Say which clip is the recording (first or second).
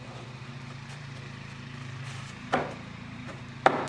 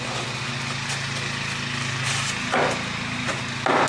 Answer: second